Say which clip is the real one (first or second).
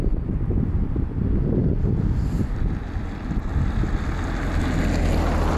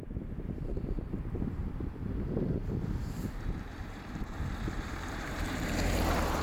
first